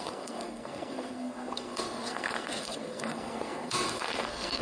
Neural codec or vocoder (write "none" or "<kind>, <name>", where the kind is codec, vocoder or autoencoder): codec, SNAC